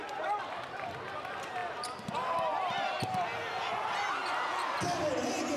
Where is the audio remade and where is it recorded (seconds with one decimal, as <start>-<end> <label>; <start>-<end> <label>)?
0.0-5.6 recorded